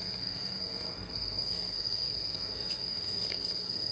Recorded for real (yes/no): no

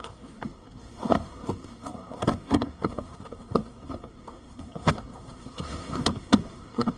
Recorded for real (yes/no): no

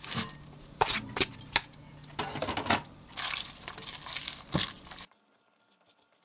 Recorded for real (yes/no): yes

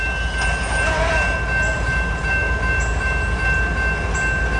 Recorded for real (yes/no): yes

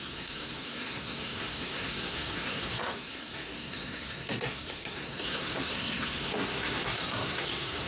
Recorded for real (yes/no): no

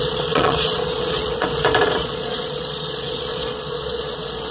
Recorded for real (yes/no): no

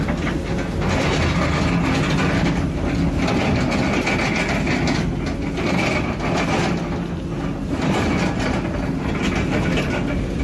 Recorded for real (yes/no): yes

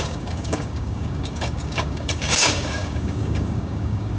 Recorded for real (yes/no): no